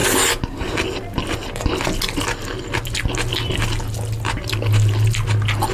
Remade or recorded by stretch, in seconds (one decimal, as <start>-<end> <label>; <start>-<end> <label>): 0.0-5.7 recorded